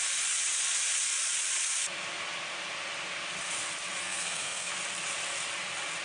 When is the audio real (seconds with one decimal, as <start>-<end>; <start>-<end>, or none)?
0.0-4.0; 4.7-6.0